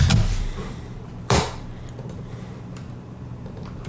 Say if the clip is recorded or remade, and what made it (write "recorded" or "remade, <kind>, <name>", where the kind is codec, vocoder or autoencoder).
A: remade, vocoder, BigVGAN v2